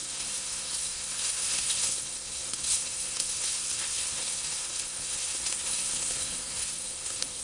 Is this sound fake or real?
fake